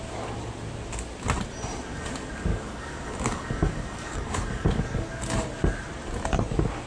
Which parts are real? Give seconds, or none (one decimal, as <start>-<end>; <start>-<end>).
0.0-2.5; 5.2-6.9